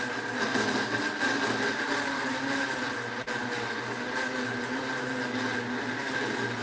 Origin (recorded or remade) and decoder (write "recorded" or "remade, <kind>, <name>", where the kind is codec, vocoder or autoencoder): recorded